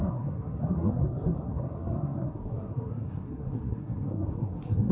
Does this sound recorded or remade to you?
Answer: remade